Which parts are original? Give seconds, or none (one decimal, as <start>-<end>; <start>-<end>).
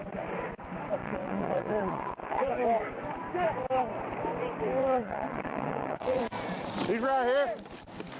0.0-1.0; 2.5-4.8; 6.2-8.2